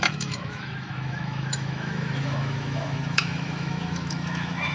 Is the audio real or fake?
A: fake